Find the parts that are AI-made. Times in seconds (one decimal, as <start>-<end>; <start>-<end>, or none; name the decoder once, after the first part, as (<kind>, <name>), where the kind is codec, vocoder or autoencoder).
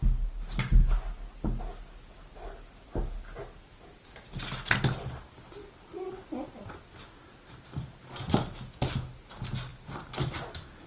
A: none